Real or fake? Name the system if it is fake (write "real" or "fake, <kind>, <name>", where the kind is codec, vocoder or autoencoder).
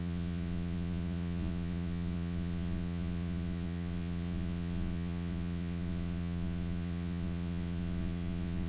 fake, vocoder, Vocos